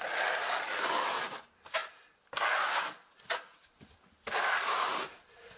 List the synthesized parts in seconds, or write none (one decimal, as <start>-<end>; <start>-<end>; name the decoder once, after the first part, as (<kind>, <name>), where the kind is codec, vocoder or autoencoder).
none